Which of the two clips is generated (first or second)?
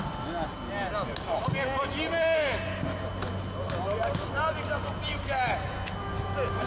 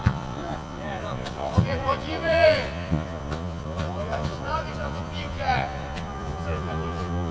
second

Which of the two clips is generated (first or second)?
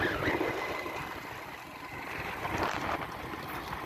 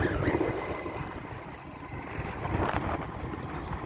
second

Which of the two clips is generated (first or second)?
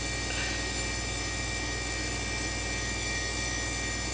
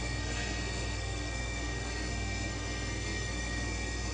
second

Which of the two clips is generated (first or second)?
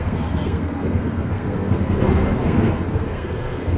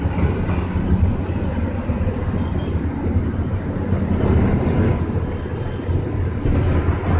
first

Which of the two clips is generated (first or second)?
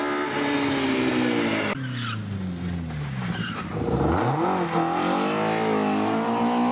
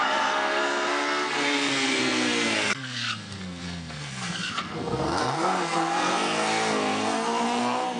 second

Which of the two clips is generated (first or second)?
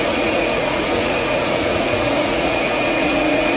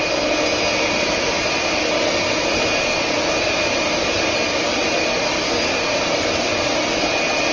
first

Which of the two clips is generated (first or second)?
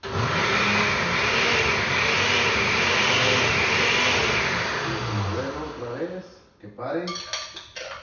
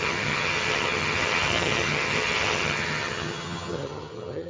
second